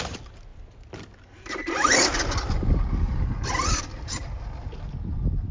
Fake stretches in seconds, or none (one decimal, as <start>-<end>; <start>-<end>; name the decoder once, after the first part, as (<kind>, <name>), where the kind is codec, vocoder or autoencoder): none